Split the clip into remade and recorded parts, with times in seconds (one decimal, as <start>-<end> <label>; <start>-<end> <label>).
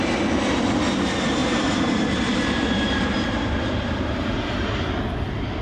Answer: 0.0-1.4 recorded; 1.4-4.8 remade; 4.8-5.6 recorded